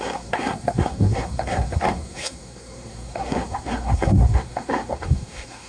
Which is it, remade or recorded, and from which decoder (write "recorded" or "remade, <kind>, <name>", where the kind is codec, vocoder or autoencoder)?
remade, codec, SNAC